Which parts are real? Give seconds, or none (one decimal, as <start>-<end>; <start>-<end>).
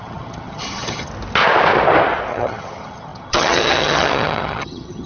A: 1.1-2.3